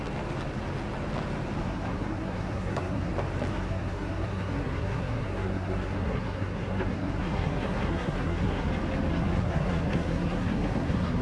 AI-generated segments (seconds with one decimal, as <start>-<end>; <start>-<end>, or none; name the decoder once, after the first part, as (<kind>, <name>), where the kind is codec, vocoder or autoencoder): 1.6-3.1 (codec, SNAC); 3.5-8.7; 9.1-11.2